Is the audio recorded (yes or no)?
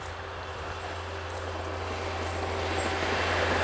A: yes